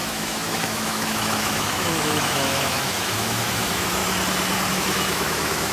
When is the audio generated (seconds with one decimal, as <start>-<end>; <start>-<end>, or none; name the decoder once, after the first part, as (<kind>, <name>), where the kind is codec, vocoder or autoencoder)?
0.0-4.0 (autoencoder, DAC-VAE); 4.7-5.7